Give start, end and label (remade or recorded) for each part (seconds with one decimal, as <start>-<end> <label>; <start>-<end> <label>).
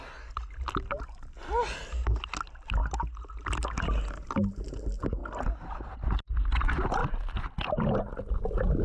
0.0-8.8 recorded